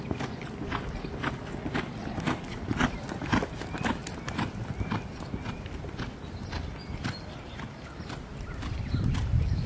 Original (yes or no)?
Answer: no